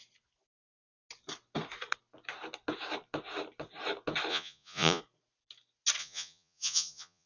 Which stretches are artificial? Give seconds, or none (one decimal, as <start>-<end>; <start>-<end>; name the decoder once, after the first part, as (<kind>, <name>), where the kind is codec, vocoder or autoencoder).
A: 4.3-5.0 (vocoder, Vocos); 6.0-7.3